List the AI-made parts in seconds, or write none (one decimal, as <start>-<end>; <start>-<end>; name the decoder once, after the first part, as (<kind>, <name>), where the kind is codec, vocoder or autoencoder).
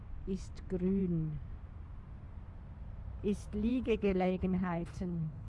3.7-5.5 (codec, HILCodec)